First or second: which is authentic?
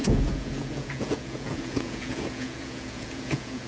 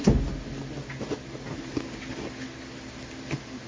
second